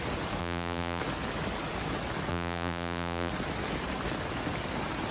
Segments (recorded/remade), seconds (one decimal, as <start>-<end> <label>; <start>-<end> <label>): 0.0-0.4 recorded; 0.4-1.0 remade; 1.0-2.3 recorded; 2.3-3.3 remade; 3.3-5.1 recorded